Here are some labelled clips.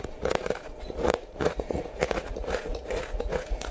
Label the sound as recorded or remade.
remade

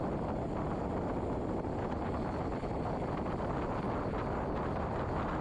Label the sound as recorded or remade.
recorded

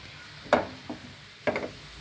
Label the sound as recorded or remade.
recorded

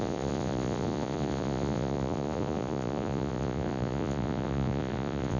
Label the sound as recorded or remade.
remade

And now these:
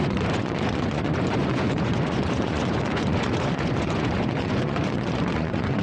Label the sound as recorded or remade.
remade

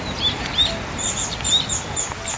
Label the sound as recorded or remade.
recorded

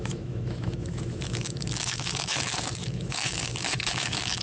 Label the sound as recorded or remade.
remade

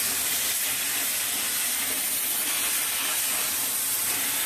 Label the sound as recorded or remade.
recorded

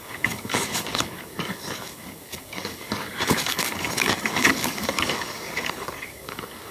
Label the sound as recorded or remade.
remade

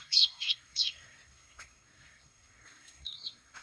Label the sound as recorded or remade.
remade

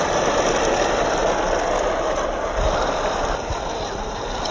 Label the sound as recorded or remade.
remade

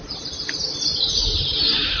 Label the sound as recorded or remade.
remade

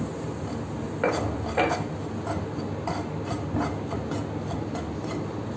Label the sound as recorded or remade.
recorded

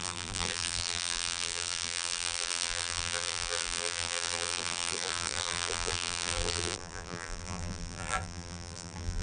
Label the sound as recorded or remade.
remade